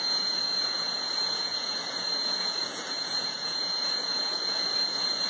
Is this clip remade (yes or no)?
yes